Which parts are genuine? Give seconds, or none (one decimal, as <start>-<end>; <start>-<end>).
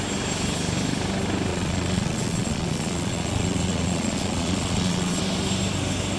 0.0-1.5; 5.2-6.2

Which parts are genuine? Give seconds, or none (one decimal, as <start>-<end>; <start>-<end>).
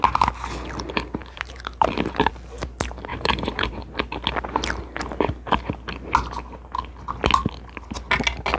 0.0-1.2; 2.3-3.1; 3.7-8.6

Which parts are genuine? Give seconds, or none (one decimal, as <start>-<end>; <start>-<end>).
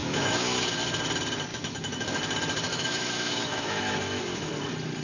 0.7-1.5; 2.2-2.7; 4.5-5.0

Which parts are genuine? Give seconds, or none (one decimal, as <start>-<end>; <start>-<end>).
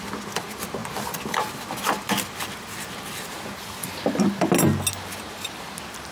0.0-3.8; 4.5-6.1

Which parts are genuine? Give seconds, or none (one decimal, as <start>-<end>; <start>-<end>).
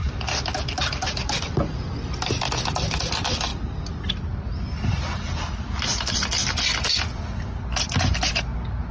0.0-8.9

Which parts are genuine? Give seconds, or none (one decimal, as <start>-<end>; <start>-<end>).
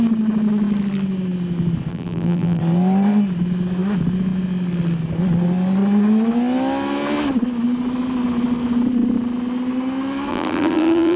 0.0-1.9; 2.6-10.3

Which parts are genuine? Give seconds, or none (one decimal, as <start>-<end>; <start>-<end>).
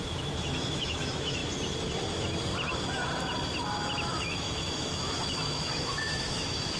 1.4-4.2